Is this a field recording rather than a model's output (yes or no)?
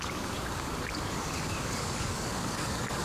no